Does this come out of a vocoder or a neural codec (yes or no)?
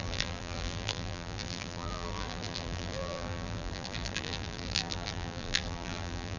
yes